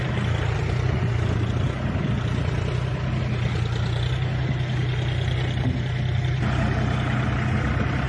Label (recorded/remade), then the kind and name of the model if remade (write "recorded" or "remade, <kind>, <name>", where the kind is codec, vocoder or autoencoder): recorded